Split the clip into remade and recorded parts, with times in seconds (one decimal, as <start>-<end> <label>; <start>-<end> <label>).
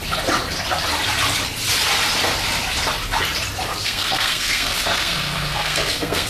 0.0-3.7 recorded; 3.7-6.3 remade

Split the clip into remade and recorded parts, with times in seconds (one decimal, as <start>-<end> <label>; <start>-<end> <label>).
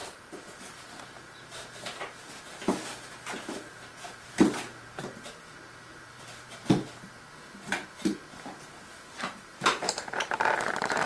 0.0-11.1 remade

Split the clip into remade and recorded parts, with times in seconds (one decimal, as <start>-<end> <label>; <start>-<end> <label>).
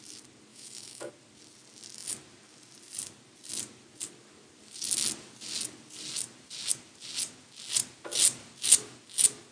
0.0-0.5 recorded; 0.5-1.1 remade; 1.1-9.5 recorded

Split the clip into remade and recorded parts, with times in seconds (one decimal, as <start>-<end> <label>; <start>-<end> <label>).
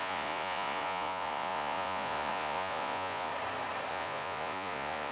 0.0-3.3 remade; 3.3-3.9 recorded; 3.9-5.1 remade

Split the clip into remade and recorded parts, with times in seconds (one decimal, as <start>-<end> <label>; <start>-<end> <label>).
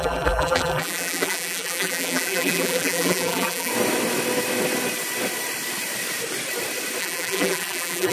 0.0-3.7 remade; 3.7-7.0 recorded; 7.0-8.1 remade